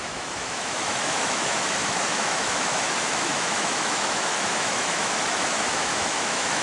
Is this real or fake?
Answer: fake